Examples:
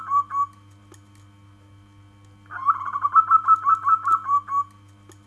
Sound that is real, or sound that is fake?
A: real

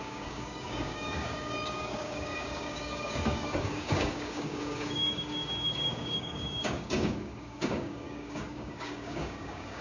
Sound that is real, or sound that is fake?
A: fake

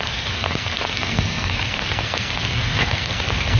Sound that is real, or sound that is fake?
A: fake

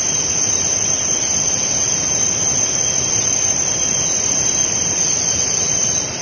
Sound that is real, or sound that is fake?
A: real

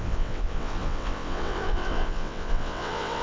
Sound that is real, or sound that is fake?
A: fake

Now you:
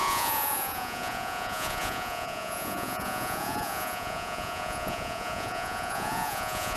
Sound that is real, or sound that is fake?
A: fake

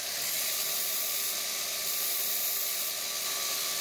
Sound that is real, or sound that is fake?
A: real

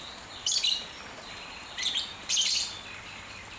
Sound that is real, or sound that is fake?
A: fake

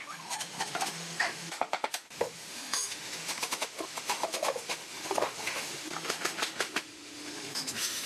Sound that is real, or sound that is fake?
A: fake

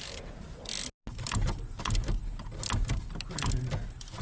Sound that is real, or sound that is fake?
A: real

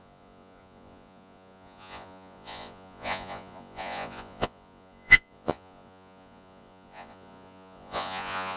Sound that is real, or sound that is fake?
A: fake